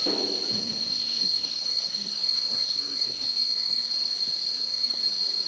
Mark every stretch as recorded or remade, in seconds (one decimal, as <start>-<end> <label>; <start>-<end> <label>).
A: 0.0-0.6 recorded; 0.6-3.9 remade; 3.9-4.5 recorded; 4.5-5.0 remade; 5.0-5.5 recorded